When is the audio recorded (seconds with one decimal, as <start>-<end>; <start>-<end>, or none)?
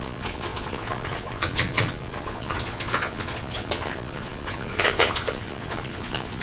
none